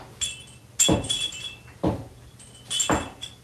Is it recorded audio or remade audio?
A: recorded